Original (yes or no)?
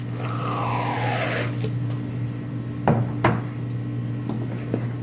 yes